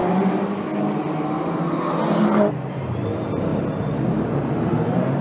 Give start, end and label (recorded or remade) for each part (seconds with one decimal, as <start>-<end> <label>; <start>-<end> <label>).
0.0-2.7 recorded; 2.7-3.5 remade; 3.5-4.1 recorded; 4.1-5.2 remade